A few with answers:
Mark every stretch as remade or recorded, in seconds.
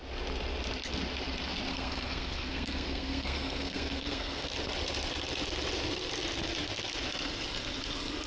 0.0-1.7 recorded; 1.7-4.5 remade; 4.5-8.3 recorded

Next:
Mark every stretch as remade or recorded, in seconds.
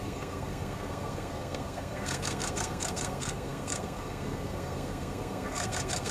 0.0-6.1 remade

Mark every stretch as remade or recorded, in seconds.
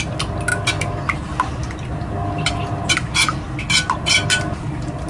0.0-5.1 recorded